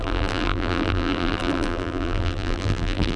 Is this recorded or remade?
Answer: remade